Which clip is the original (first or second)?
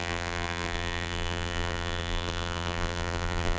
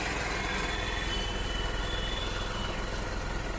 second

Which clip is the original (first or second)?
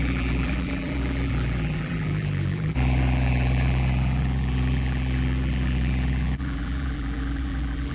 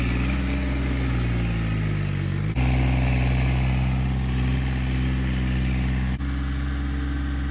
second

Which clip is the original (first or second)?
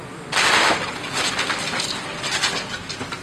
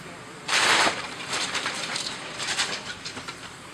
first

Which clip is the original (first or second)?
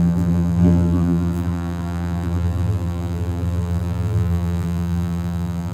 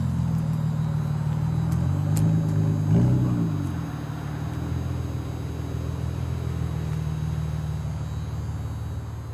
second